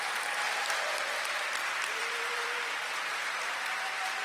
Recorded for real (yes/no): no